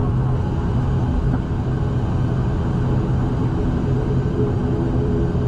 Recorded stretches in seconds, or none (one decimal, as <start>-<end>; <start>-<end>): 0.0-3.3; 4.6-5.5